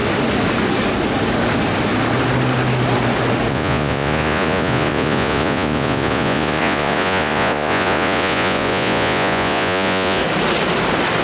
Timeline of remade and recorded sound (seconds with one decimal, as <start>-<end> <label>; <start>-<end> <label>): 0.0-3.5 recorded; 3.5-10.2 remade; 10.2-11.2 recorded